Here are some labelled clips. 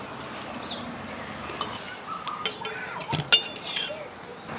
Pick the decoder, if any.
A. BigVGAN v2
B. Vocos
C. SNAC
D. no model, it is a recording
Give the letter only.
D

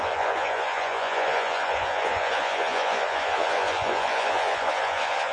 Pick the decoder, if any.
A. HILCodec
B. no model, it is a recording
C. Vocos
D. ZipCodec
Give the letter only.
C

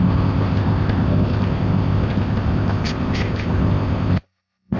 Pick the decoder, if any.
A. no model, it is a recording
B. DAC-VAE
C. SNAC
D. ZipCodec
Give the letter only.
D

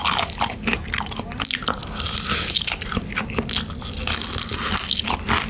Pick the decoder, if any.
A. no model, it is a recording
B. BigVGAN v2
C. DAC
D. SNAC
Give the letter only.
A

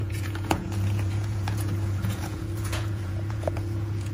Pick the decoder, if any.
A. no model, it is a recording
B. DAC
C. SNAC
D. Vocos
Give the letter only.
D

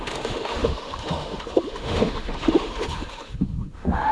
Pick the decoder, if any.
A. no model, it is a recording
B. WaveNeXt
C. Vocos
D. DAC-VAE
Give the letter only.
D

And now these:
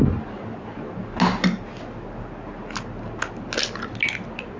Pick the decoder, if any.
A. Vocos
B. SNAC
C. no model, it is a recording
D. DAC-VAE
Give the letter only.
C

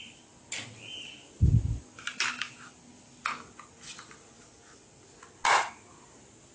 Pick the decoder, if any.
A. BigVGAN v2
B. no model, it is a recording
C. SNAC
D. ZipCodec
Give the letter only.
B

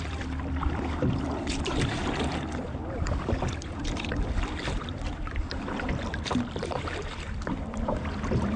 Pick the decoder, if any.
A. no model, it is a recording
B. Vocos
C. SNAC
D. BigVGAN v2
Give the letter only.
D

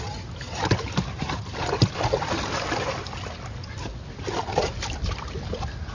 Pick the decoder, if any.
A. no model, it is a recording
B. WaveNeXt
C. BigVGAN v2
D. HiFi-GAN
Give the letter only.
A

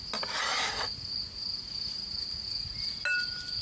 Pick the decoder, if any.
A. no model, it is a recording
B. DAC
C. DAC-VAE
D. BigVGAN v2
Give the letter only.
A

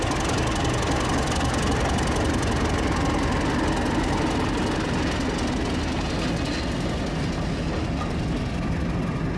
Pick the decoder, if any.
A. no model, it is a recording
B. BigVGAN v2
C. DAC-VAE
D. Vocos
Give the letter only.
A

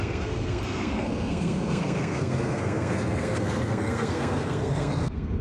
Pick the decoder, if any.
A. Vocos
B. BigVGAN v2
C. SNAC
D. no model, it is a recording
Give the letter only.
C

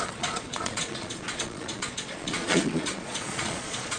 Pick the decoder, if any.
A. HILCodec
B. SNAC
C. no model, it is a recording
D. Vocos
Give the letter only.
D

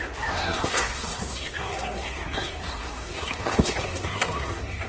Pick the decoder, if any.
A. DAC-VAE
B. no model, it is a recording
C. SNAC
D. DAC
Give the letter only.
C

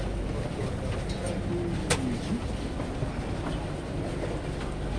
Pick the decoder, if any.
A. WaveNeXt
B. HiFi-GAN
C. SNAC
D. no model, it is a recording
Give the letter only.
D